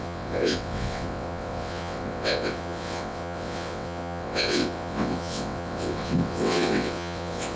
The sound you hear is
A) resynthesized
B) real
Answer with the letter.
A